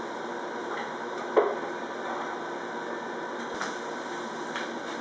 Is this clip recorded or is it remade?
recorded